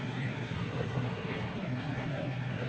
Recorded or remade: remade